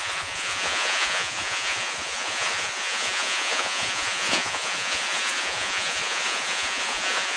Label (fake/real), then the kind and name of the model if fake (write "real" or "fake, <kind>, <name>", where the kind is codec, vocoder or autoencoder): fake, vocoder, Vocos